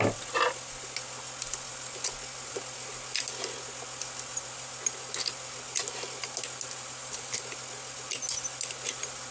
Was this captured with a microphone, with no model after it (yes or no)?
yes